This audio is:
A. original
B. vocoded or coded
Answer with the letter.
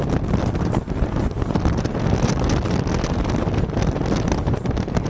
A